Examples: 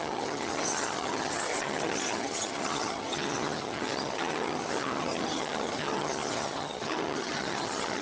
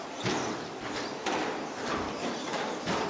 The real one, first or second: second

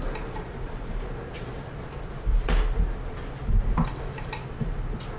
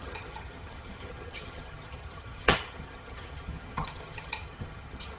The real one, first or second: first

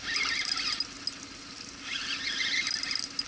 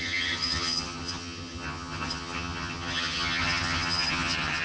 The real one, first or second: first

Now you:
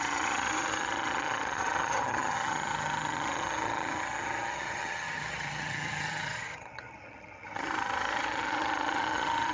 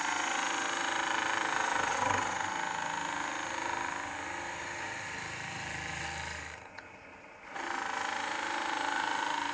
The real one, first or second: second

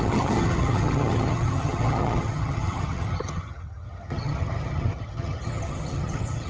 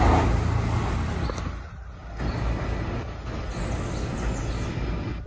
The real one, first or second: second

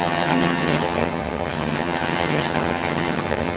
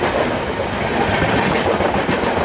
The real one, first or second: second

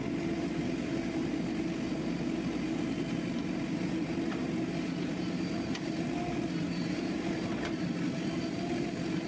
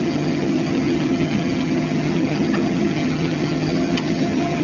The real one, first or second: first